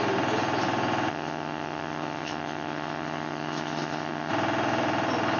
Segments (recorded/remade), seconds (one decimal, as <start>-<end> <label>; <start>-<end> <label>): 0.0-1.1 recorded; 1.1-4.3 remade; 4.3-5.4 recorded